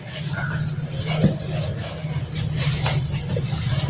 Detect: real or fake real